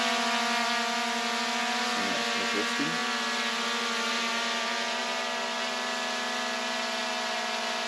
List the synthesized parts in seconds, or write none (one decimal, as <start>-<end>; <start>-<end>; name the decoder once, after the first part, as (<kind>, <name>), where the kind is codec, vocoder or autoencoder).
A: none